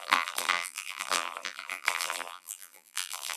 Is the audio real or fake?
fake